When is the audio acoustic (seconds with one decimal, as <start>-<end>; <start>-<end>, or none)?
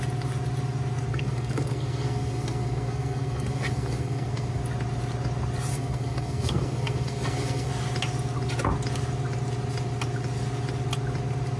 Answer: 0.0-1.1; 4.6-5.7; 7.7-11.6